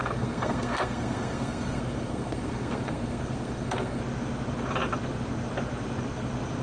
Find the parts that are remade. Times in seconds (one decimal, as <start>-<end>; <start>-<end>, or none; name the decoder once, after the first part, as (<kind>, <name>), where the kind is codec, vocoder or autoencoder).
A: 0.0-4.0 (codec, SNAC)